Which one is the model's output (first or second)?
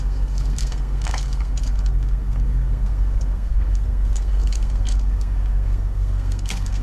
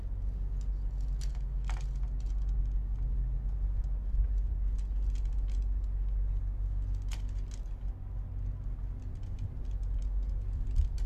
first